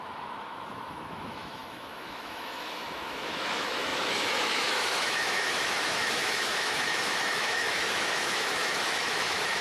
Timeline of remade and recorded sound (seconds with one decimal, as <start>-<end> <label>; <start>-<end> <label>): 0.0-9.6 remade